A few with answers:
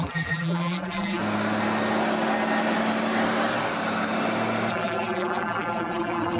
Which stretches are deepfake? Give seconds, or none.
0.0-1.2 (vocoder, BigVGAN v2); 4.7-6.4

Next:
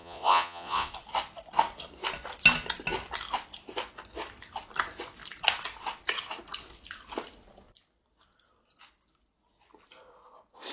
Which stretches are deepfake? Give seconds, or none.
0.0-0.9 (vocoder, Vocos)